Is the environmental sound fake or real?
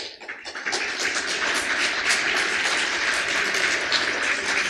real